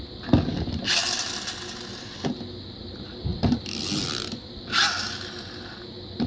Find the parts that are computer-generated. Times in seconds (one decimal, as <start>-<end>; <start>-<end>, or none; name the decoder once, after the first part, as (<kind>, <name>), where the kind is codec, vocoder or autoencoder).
3.3-5.3 (vocoder, BigVGAN v2)